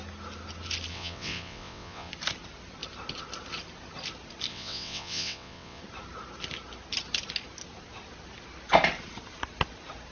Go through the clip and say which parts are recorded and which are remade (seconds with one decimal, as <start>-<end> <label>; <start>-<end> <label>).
0.0-0.9 recorded; 0.9-2.1 remade; 2.1-4.5 recorded; 4.5-5.8 remade; 5.8-10.1 recorded